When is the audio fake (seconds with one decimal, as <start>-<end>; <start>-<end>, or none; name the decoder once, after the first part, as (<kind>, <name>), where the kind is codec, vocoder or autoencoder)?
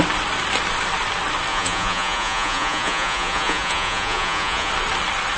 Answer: 1.5-4.7 (vocoder, Vocos)